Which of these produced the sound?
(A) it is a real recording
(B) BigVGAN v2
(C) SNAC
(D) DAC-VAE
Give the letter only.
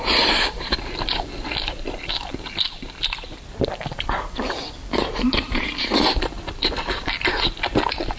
B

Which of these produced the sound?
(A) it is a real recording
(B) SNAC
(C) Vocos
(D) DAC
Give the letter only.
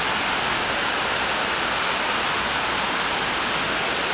A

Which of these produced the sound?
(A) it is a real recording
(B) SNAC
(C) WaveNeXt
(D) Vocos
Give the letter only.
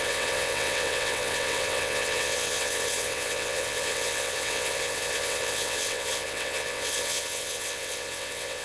C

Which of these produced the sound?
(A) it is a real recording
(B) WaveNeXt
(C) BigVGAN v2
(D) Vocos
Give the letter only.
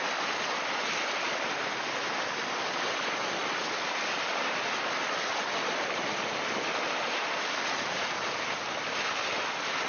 A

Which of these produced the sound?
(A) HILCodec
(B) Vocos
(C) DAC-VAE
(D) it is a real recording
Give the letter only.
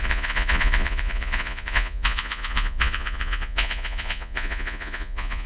B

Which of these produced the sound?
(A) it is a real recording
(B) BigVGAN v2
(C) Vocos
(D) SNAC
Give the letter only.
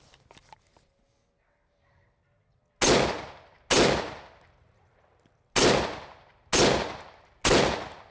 A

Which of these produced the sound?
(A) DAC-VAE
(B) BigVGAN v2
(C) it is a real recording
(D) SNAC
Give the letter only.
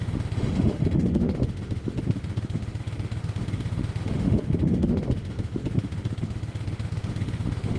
A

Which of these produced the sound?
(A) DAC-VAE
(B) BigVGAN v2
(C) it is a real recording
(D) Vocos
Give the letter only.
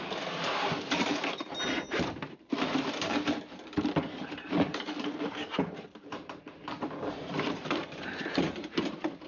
B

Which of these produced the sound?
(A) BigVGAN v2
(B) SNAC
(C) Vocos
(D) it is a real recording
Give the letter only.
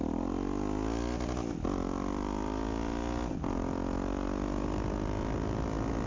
D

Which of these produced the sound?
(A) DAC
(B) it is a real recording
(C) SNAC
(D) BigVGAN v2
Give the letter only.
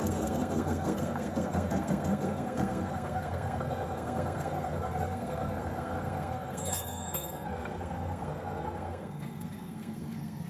C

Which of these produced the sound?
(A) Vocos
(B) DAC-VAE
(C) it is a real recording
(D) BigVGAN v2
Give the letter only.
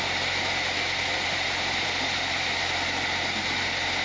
C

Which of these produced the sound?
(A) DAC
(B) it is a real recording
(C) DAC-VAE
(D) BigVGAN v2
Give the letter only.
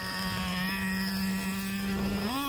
B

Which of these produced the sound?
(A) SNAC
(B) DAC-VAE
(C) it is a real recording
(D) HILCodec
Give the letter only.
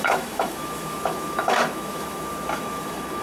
B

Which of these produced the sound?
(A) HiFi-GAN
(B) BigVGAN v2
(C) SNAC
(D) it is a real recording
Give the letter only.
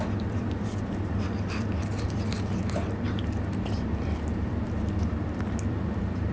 B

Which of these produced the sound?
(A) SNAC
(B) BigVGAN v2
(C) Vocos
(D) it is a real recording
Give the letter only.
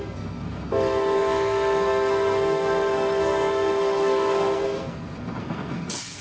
A